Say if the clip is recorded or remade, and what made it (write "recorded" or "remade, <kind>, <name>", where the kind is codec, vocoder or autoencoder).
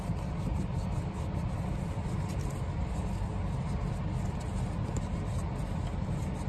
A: recorded